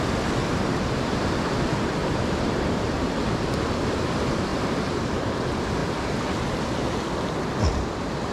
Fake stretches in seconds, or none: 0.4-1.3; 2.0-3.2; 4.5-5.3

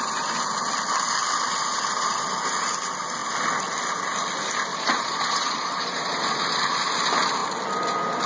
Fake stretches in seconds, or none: 4.7-6.9

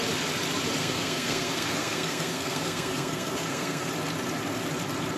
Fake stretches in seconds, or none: 0.8-3.9

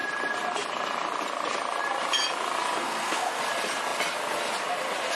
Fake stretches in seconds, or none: 2.8-3.4

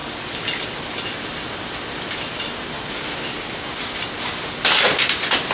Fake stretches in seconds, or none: none

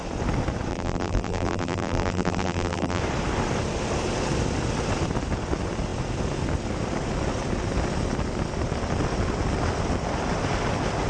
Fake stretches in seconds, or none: 0.7-3.0

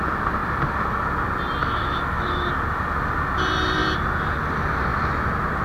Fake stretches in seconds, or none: 1.6-2.5